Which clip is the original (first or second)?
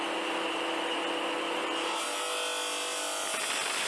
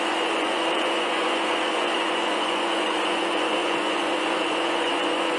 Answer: first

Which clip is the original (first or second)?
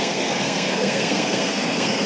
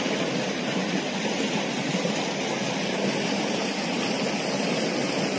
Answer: second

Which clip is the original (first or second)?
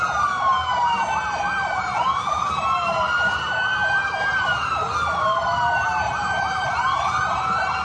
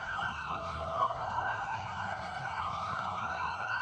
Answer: first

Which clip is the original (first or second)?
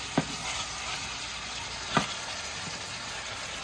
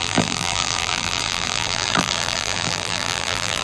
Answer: first